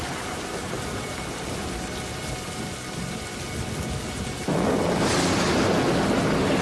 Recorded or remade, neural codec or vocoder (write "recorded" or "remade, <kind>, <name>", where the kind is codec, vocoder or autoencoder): recorded